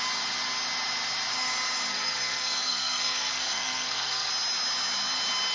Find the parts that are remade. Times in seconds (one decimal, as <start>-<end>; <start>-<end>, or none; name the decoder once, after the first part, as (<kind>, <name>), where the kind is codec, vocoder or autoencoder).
1.9-4.3 (codec, SNAC)